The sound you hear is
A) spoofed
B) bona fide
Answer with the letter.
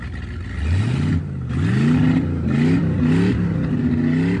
B